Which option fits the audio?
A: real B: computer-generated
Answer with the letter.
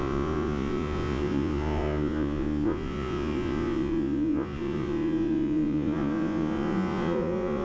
B